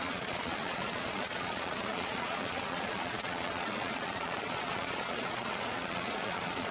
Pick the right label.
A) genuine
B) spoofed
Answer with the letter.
B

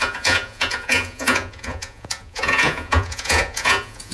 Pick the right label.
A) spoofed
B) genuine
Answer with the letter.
A